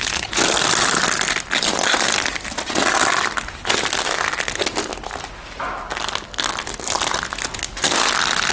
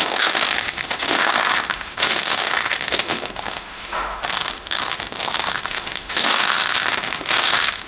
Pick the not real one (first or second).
second